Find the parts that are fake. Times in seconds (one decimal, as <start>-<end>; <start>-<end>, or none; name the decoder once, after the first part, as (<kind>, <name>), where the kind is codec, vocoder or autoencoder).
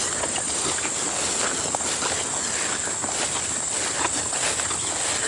none